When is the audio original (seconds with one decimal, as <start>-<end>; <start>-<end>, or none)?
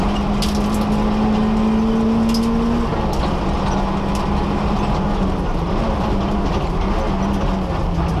0.0-8.2